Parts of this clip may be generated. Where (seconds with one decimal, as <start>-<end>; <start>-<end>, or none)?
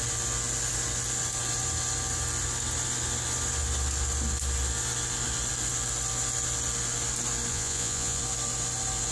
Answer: 7.5-8.2